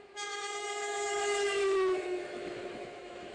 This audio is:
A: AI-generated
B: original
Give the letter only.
A